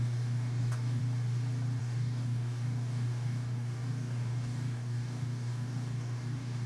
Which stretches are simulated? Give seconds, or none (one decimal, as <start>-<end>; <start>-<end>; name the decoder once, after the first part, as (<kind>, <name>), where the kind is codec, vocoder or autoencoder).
0.0-1.0 (codec, DAC); 1.8-6.7